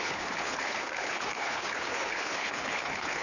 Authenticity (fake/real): fake